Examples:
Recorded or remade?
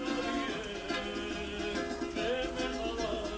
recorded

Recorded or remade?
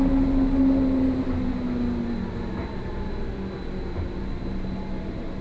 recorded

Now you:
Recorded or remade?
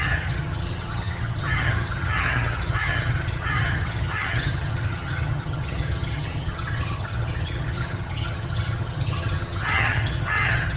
remade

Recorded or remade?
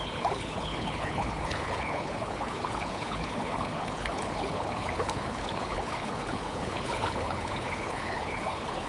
remade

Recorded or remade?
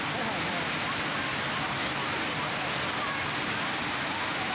recorded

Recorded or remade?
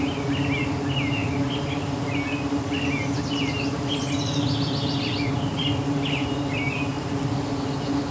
recorded